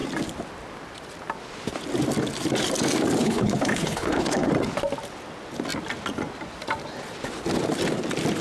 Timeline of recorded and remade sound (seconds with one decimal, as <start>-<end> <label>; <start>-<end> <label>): 0.0-3.2 recorded; 3.2-4.5 remade; 4.5-8.4 recorded

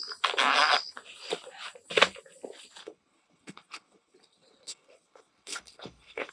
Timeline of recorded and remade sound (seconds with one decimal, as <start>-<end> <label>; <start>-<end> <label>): 0.0-2.8 recorded; 2.8-6.3 remade

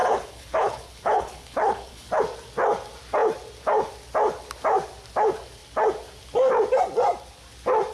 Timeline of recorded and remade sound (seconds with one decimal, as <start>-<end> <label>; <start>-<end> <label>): 0.0-2.2 remade; 2.2-7.9 recorded

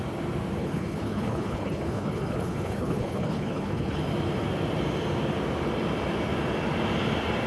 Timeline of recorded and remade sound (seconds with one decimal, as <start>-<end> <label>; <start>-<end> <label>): 0.0-0.6 recorded; 0.6-4.0 remade; 4.0-7.5 recorded